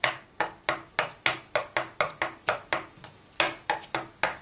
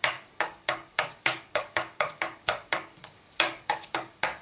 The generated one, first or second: second